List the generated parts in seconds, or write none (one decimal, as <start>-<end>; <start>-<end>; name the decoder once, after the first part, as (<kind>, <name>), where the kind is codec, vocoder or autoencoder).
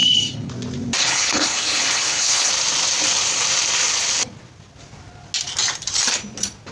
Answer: 0.0-0.5 (codec, HILCodec); 1.0-2.5